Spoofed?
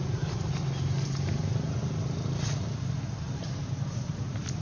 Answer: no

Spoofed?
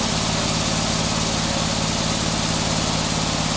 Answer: no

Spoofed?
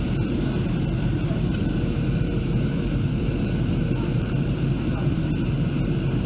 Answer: yes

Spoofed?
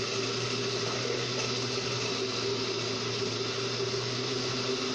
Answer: no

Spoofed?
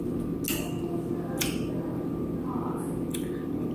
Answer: no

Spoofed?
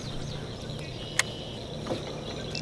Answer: no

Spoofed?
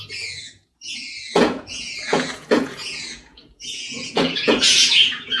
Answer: yes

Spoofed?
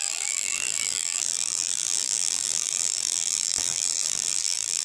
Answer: yes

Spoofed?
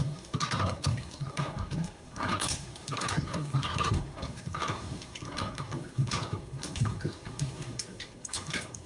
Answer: yes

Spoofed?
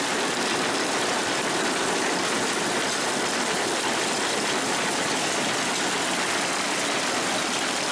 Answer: no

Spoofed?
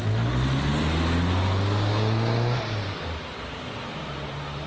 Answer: no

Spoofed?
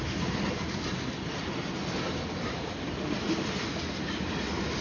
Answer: no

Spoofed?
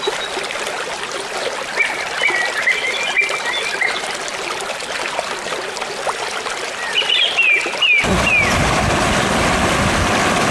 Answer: no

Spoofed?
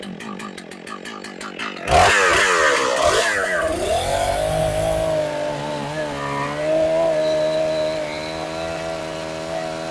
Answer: no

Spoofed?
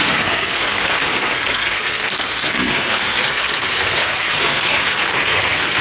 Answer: yes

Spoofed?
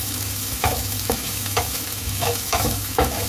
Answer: yes